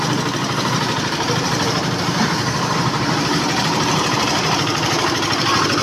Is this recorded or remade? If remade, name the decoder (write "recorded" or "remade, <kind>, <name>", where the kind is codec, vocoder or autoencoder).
remade, vocoder, BigVGAN v2